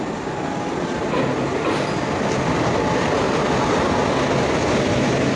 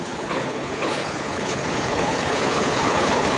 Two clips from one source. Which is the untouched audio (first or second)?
first